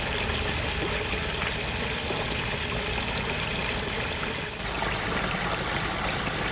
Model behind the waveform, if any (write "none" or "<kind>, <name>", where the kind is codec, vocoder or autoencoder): none